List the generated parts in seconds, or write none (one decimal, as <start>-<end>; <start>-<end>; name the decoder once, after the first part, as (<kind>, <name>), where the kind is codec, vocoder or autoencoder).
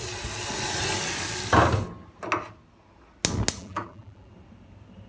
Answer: 3.6-4.3 (vocoder, BigVGAN v2)